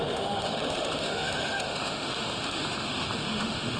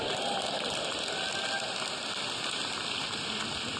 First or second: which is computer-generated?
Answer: first